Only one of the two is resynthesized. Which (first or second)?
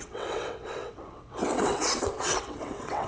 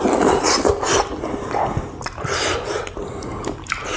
first